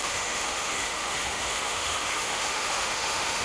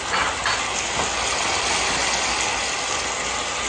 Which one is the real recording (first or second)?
second